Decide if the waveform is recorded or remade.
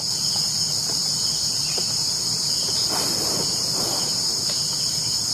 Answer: recorded